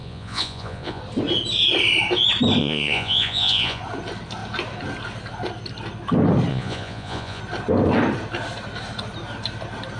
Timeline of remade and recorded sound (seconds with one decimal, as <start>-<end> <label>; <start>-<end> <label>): 0.0-1.0 remade; 1.0-2.6 recorded; 2.6-3.8 remade; 3.8-6.5 recorded; 6.5-7.4 remade; 7.4-10.0 recorded